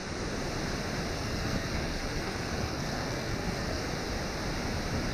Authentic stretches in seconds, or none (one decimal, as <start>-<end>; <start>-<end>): 0.0-1.2; 3.8-5.1